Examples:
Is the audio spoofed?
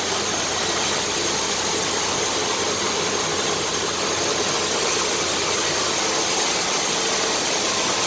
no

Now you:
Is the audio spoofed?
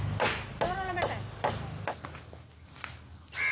no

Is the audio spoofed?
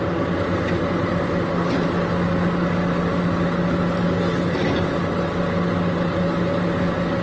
no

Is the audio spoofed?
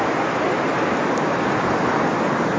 no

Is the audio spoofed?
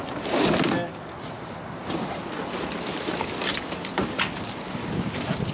no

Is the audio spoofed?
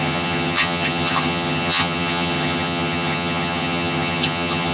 yes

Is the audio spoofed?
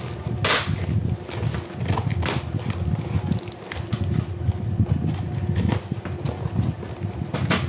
no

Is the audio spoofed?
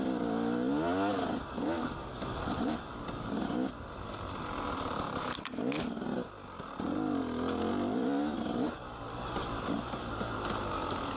no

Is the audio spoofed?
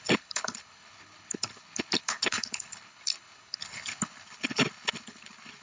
yes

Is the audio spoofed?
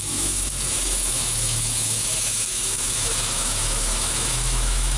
yes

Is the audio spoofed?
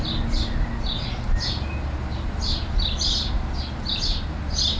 no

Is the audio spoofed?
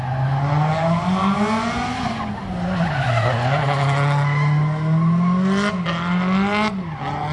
no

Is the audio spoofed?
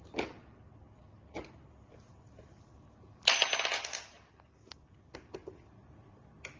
no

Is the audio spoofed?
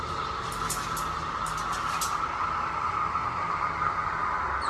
no